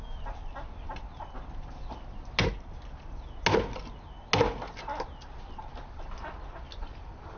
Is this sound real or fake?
real